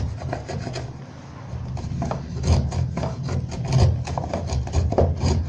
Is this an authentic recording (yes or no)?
yes